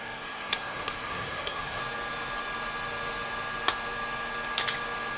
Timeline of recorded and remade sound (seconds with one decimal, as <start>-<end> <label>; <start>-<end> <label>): 0.0-1.8 remade; 1.8-5.2 recorded